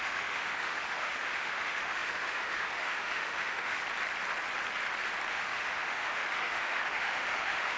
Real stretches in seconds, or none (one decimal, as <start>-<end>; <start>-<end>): 3.8-5.3

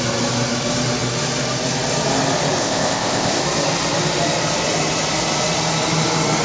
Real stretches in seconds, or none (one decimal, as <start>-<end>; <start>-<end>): 0.0-2.6; 3.4-6.4

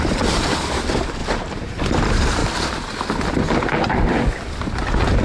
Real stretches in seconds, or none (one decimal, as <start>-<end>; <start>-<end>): 2.4-4.6

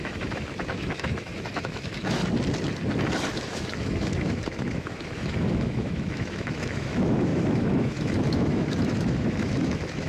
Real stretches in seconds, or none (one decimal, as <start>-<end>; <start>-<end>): 2.2-3.3

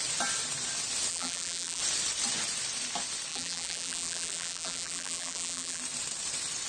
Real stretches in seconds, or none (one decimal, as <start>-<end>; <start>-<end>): 0.0-1.1; 1.8-3.3; 5.8-6.7